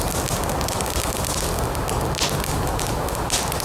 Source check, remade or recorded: recorded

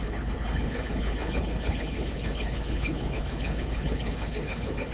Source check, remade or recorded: remade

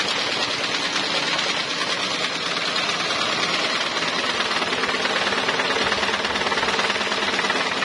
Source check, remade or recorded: recorded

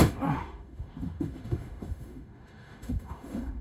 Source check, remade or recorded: remade